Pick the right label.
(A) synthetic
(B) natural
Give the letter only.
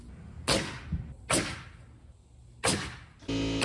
B